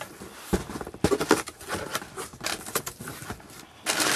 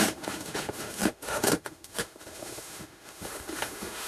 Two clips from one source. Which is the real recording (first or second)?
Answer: first